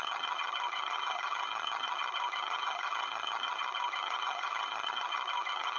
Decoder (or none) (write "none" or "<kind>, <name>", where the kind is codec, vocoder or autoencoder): vocoder, HiFi-GAN